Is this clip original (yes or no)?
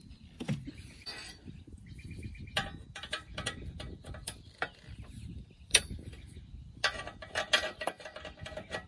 no